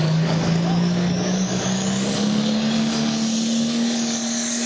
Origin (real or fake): fake